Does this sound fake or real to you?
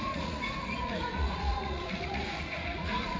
fake